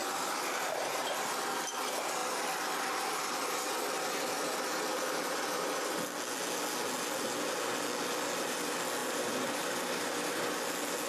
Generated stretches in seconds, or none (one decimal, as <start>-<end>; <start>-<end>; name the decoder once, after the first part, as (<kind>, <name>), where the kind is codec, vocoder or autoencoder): 0.0-0.9 (vocoder, BigVGAN v2); 9.0-10.4